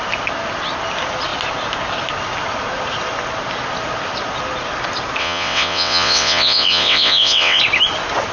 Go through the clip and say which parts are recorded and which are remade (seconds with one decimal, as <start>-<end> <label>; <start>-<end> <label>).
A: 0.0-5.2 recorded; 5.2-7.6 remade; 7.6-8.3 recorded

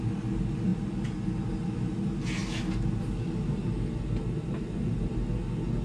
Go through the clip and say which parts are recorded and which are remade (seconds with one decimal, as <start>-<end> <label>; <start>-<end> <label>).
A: 0.0-5.8 recorded

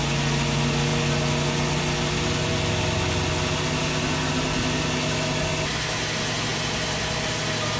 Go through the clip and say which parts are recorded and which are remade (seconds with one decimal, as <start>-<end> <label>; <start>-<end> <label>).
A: 0.0-7.8 recorded

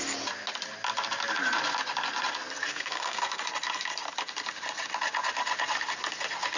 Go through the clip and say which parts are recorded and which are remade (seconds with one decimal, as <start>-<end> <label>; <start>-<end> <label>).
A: 0.0-2.7 recorded; 2.7-3.4 remade; 3.4-6.6 recorded

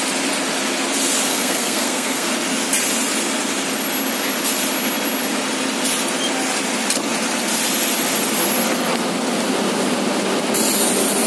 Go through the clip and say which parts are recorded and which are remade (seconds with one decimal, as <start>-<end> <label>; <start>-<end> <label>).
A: 0.0-1.3 recorded; 1.3-2.3 remade; 2.3-11.3 recorded

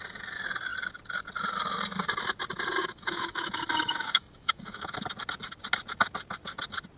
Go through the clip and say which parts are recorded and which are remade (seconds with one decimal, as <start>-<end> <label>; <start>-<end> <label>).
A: 0.0-2.8 recorded; 2.8-4.9 remade; 4.9-7.0 recorded